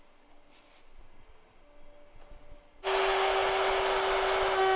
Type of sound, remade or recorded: recorded